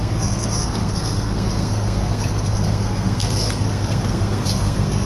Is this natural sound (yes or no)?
no